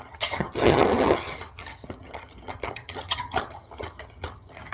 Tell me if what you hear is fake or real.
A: fake